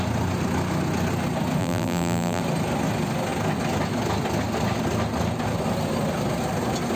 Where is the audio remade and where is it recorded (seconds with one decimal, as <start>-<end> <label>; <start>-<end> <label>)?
0.0-1.6 recorded; 1.6-2.4 remade; 2.4-7.0 recorded